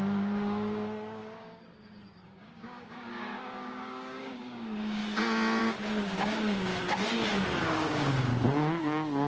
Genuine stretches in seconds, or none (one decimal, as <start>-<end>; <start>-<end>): 5.0-5.6; 6.7-7.6; 8.3-8.8